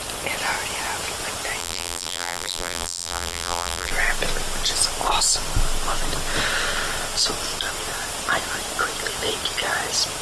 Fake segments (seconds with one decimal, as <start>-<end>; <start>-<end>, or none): 1.6-3.9

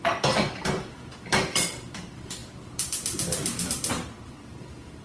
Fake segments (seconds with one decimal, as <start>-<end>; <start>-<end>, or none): 0.0-5.0

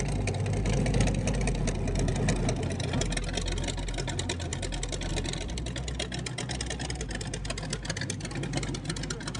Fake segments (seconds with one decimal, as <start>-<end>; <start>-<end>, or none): none

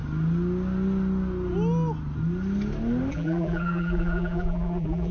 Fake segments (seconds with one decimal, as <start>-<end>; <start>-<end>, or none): 3.1-5.1

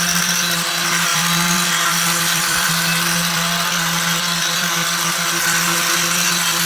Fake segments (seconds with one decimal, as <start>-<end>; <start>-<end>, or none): 1.1-2.7